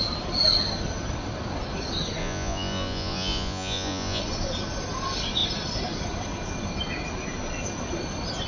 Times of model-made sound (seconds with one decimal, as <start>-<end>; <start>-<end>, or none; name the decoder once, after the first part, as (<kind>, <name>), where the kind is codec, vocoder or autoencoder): 2.2-4.2 (vocoder, Vocos)